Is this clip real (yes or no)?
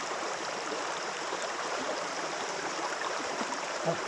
no